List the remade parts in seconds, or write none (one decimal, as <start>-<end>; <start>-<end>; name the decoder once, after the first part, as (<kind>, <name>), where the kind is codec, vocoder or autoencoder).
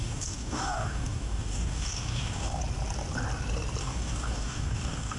0.0-2.6 (codec, DAC); 3.8-5.2